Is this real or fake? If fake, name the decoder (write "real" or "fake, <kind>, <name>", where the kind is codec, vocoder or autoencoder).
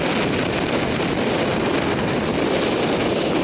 real